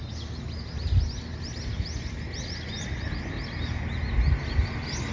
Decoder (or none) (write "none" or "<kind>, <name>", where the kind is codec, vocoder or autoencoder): none